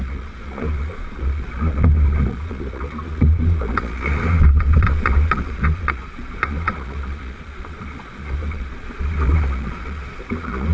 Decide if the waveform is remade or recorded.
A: remade